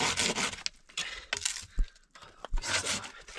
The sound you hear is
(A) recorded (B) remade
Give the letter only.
A